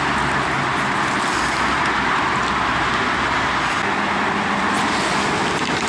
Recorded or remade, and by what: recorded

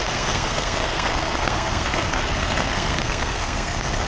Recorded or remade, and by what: remade, codec, SNAC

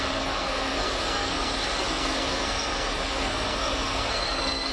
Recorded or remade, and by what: remade, codec, SNAC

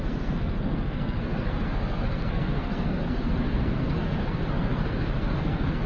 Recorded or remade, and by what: remade, codec, SNAC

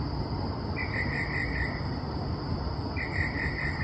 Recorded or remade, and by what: recorded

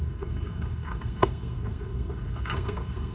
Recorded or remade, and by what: remade, codec, SNAC